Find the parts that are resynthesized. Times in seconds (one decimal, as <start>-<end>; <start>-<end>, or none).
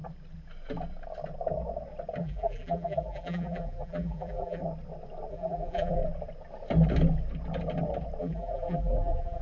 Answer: 2.2-4.6; 5.3-6.0; 8.2-9.4